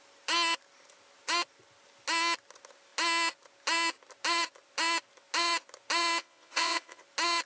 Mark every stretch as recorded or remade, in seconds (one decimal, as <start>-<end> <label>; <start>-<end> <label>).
0.0-6.2 recorded; 6.2-7.0 remade; 7.0-7.5 recorded

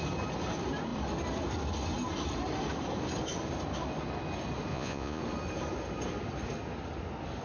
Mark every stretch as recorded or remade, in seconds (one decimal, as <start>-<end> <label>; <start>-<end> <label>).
0.0-4.7 recorded; 4.7-5.2 remade; 5.2-7.4 recorded

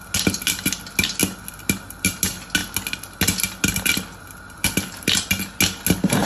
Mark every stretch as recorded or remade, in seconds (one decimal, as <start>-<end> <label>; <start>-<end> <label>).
0.0-6.3 recorded

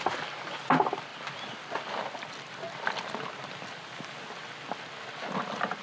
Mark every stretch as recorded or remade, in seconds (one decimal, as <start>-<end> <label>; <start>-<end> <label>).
0.0-5.8 recorded

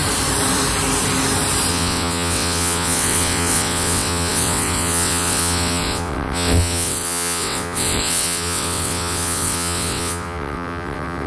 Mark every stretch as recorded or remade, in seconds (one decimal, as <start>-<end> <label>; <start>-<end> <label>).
0.0-1.7 recorded; 1.7-11.3 remade